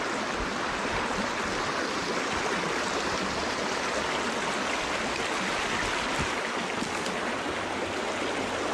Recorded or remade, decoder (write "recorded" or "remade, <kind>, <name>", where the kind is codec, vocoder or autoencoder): recorded